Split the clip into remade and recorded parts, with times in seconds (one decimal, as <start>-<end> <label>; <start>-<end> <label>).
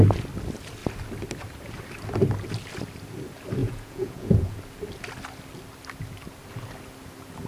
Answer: 0.0-3.6 recorded; 3.6-4.6 remade; 4.6-7.5 recorded